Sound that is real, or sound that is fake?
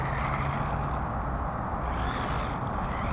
real